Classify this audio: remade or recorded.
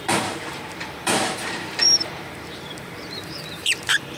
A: remade